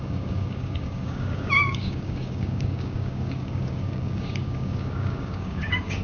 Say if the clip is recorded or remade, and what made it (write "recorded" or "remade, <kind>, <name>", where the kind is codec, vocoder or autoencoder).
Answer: remade, codec, DAC